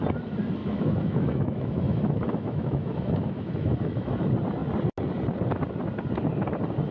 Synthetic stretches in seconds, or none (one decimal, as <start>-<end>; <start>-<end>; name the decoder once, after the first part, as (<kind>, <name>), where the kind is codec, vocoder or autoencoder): 0.6-4.1 (autoencoder, DAC-VAE)